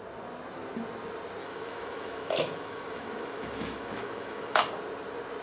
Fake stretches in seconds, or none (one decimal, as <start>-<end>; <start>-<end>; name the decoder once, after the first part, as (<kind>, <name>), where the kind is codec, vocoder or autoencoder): 1.4-4.6 (autoencoder, DAC-VAE)